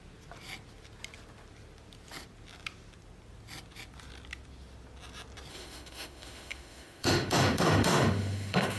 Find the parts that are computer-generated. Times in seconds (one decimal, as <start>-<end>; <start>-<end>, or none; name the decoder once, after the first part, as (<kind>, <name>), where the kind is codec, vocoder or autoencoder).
5.5-8.8 (autoencoder, DAC-VAE)